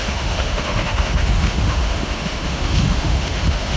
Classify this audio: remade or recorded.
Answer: remade